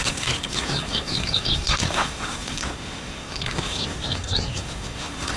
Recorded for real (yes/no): no